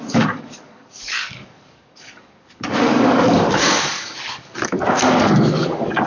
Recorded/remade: remade